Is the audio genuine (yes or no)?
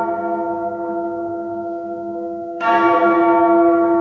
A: no